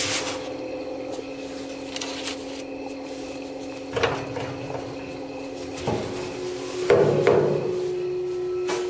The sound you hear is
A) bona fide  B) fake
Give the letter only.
A